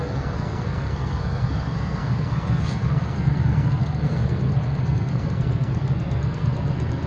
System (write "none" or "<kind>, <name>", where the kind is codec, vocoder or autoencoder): codec, SNAC